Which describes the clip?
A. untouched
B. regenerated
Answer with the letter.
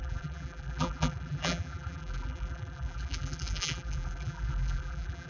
B